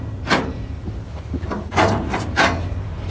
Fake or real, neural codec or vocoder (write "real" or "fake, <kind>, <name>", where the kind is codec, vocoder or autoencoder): fake, vocoder, BigVGAN v2